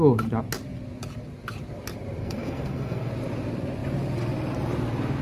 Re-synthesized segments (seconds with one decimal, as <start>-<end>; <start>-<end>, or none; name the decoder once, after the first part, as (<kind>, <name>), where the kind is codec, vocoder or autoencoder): 2.2-3.1 (codec, SNAC)